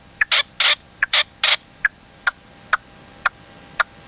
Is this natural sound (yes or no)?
yes